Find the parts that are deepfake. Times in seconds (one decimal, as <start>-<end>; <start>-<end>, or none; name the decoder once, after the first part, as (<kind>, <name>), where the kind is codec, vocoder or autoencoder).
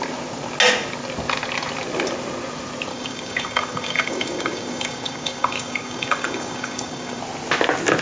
2.9-7.2 (codec, DAC)